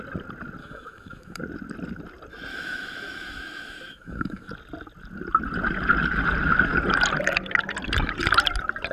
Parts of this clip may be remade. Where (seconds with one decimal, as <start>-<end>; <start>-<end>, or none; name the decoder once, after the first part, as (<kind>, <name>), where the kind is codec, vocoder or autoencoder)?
0.6-1.4 (autoencoder, DAC-VAE); 2.5-4.5